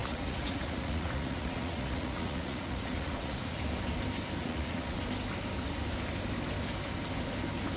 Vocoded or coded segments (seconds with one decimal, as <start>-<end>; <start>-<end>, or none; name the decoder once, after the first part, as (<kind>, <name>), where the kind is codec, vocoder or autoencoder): 0.0-3.6 (vocoder, Vocos); 4.4-5.0